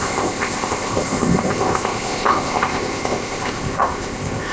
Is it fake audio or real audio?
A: fake